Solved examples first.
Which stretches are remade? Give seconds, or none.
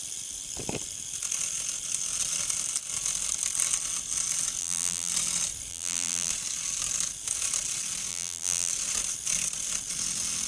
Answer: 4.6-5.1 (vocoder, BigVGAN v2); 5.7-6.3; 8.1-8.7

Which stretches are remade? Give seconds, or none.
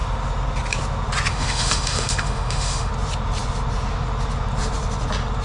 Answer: 1.3-2.9 (autoencoder, DAC-VAE)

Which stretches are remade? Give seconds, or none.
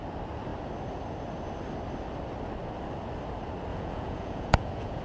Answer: 3.7-5.0 (vocoder, Vocos)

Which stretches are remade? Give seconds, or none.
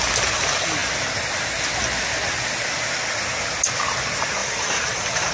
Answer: 4.4-5.3 (vocoder, BigVGAN v2)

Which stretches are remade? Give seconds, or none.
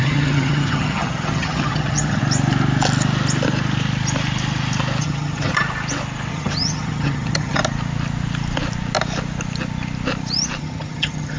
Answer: 0.0-2.2 (vocoder, HiFi-GAN); 5.0-5.5; 6.3-7.6; 10.6-11.4